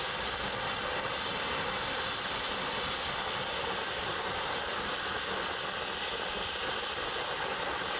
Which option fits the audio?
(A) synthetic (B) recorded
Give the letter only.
B